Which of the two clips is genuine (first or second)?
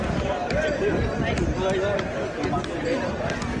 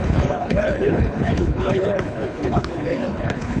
first